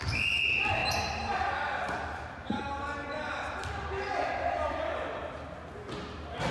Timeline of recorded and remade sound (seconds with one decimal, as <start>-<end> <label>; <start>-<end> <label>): 0.0-0.8 recorded; 0.8-4.7 remade; 4.7-6.5 recorded